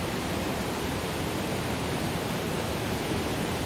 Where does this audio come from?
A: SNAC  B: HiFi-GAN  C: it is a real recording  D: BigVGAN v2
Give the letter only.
D